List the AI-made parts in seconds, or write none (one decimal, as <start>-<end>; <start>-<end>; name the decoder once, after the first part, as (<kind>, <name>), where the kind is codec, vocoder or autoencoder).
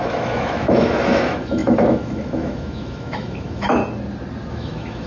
0.0-3.8 (autoencoder, DAC-VAE); 4.5-5.1